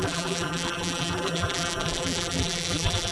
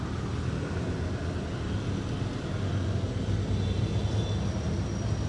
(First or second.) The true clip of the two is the second